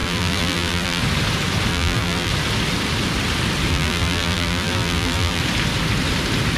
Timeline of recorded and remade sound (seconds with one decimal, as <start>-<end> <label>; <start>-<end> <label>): 0.0-1.0 remade; 1.0-1.7 recorded; 1.7-2.3 remade; 2.3-3.7 recorded; 3.7-5.4 remade; 5.4-6.6 recorded